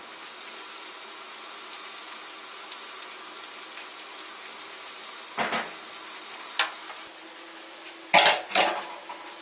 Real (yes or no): yes